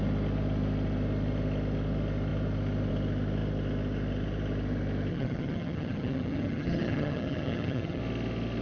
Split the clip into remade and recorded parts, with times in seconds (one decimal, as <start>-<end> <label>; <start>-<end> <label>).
0.0-5.1 recorded; 5.1-8.0 remade; 8.0-8.6 recorded

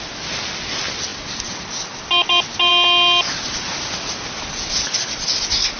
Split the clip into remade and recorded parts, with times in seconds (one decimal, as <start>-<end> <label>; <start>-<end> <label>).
0.0-5.8 recorded

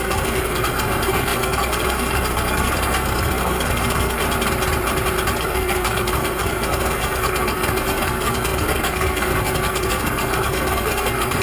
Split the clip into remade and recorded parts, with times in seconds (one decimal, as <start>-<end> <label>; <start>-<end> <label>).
0.0-4.2 remade; 4.2-5.4 recorded; 5.4-11.4 remade

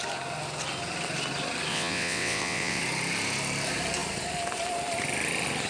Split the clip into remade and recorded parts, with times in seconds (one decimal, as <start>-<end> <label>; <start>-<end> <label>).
0.0-1.7 recorded; 1.7-2.8 remade; 2.8-5.7 recorded

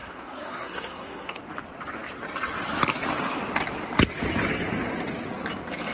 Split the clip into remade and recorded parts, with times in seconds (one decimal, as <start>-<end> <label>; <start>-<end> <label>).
0.0-1.4 remade; 1.4-5.9 recorded

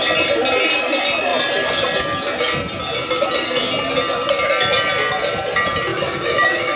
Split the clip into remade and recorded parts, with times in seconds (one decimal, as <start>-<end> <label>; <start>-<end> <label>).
0.0-5.9 recorded; 5.9-6.8 remade